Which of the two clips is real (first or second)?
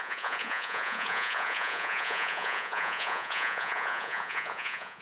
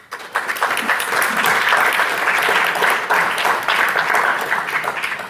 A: second